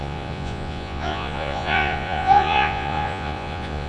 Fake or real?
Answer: fake